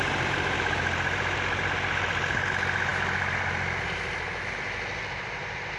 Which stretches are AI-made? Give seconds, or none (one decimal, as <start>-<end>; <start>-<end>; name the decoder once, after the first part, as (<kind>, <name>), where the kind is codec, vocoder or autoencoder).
none